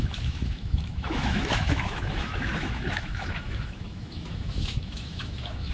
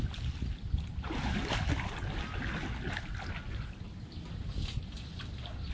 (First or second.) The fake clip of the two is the first